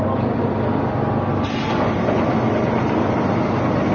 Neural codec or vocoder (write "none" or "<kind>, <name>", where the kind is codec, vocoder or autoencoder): none